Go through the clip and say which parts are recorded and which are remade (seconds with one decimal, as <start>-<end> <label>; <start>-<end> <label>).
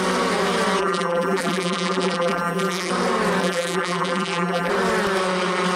0.0-0.8 recorded; 0.8-2.9 remade; 2.9-3.4 recorded; 3.4-4.7 remade; 4.7-5.8 recorded